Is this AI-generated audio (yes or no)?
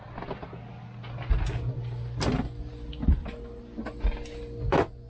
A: no